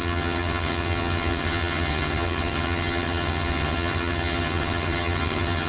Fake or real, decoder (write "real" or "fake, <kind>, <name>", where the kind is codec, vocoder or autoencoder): fake, vocoder, HiFi-GAN